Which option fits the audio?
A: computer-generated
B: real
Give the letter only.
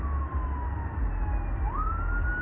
B